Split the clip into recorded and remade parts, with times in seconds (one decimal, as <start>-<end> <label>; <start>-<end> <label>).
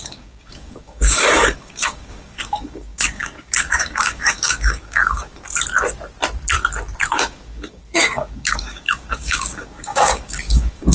0.0-5.3 remade; 5.3-7.1 recorded; 7.1-10.9 remade